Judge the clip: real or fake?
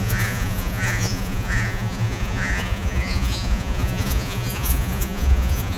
fake